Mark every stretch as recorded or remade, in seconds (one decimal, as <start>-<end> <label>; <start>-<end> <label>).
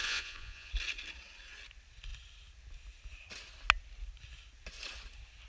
0.0-0.7 remade; 0.7-5.5 recorded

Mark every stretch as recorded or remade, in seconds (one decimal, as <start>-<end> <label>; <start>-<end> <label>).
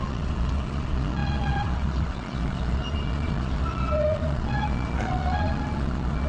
0.0-6.3 remade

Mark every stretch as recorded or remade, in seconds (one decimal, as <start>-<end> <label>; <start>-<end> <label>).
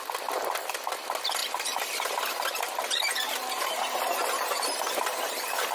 0.0-5.7 recorded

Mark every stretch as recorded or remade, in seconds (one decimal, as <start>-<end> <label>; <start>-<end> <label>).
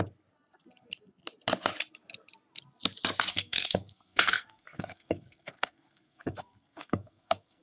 0.0-3.3 recorded; 3.3-7.6 remade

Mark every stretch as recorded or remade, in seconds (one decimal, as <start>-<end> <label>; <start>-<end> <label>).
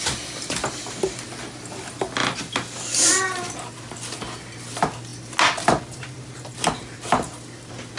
0.0-8.0 recorded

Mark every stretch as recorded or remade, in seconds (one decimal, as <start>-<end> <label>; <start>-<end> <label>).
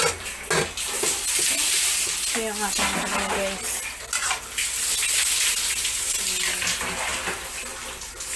0.0-8.4 recorded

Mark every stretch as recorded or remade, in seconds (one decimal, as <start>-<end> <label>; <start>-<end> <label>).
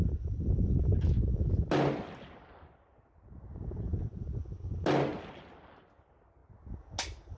0.0-7.4 recorded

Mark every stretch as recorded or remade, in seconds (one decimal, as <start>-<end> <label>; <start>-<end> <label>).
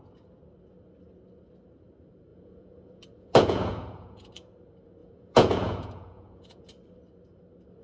0.0-2.3 recorded; 2.3-4.5 remade; 4.5-5.0 recorded; 5.0-6.7 remade; 6.7-7.8 recorded